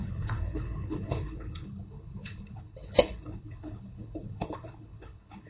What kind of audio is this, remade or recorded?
remade